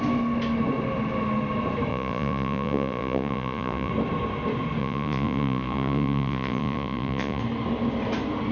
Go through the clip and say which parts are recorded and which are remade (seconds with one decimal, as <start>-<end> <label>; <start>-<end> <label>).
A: 0.0-1.9 recorded; 1.9-3.9 remade; 3.9-4.8 recorded; 4.8-7.4 remade; 7.4-8.5 recorded